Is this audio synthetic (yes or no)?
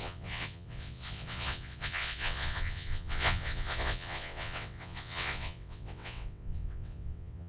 yes